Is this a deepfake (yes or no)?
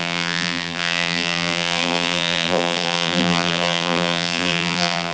yes